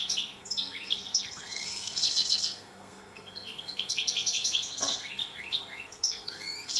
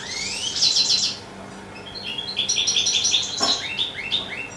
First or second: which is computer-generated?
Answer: first